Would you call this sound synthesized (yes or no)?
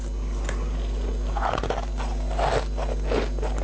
no